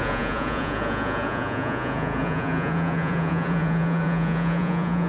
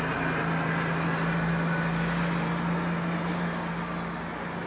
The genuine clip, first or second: second